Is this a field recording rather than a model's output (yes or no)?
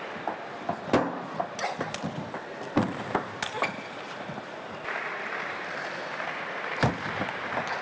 yes